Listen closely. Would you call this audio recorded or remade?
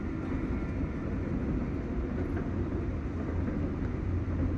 recorded